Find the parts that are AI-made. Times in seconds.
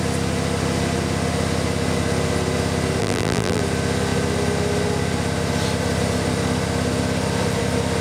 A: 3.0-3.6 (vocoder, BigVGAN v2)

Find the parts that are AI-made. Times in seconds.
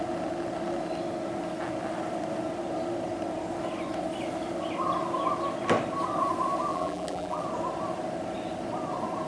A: 6.7-7.4 (vocoder, BigVGAN v2)